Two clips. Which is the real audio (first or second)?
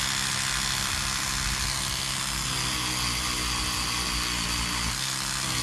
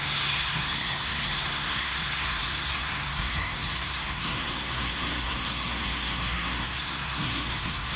first